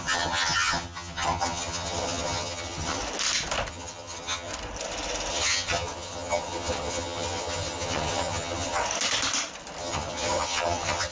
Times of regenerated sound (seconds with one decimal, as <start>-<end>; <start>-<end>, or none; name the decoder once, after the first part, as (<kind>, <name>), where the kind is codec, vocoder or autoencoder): 0.0-3.0 (vocoder, HiFi-GAN); 3.7-4.5; 5.3-8.8; 9.8-11.1